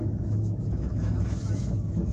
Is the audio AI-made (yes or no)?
yes